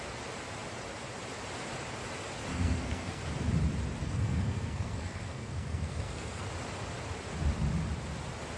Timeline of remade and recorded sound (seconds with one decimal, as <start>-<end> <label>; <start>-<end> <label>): 0.0-2.5 recorded; 2.5-3.2 remade; 3.2-4.0 recorded; 4.0-6.5 remade; 6.5-8.6 recorded